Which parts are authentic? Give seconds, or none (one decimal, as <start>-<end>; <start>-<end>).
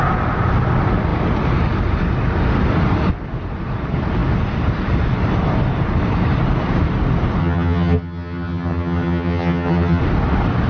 0.0-7.4; 10.0-10.7